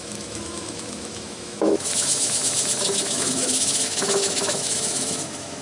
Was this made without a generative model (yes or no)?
no